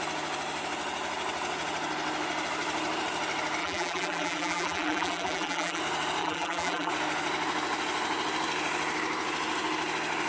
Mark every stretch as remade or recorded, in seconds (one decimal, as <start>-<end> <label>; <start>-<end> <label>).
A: 0.0-3.6 recorded; 3.6-5.8 remade; 5.8-6.2 recorded; 6.2-6.9 remade; 6.9-10.3 recorded